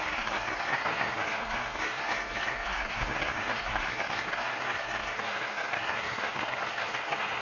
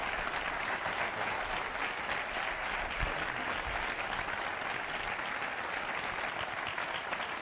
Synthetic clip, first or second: first